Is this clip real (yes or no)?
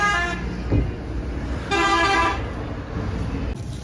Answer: yes